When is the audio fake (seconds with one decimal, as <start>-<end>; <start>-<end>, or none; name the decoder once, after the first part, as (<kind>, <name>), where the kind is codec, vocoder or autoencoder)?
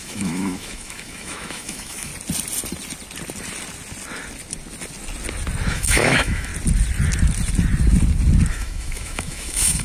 0.0-2.1 (autoencoder, DAC-VAE); 5.7-6.5; 8.5-9.8